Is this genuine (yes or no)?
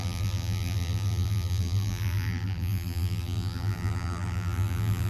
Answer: no